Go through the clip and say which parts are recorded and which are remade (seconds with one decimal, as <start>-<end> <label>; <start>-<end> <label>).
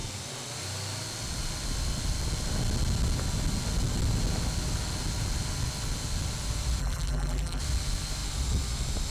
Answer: 0.0-6.8 recorded; 6.8-7.6 remade; 7.6-9.1 recorded